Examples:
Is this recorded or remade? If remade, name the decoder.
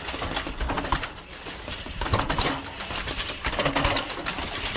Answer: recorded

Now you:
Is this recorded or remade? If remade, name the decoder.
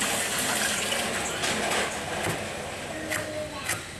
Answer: recorded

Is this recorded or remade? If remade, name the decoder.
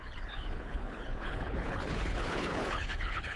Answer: remade, codec, HILCodec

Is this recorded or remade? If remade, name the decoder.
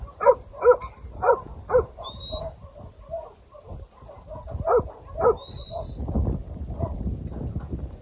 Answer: recorded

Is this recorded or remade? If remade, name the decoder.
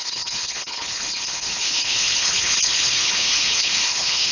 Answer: remade, codec, HILCodec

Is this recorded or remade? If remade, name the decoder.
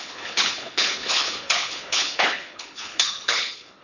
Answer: remade, codec, HILCodec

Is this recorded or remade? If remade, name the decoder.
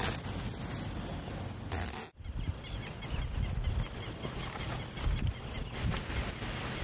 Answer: recorded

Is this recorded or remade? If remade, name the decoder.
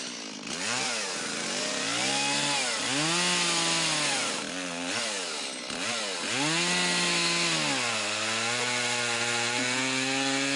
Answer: recorded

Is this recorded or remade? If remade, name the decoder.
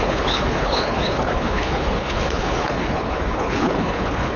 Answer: remade, codec, HILCodec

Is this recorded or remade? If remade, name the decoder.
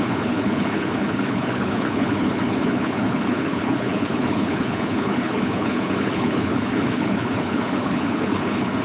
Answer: remade, codec, HILCodec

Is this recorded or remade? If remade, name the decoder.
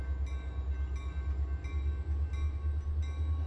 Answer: recorded